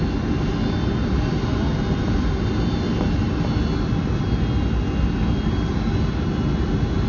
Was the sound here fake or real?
real